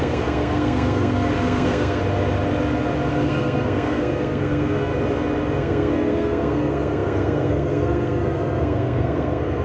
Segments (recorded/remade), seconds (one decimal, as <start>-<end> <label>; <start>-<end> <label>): 0.0-2.0 remade; 2.0-3.1 recorded; 3.1-4.9 remade; 4.9-5.6 recorded; 5.6-9.6 remade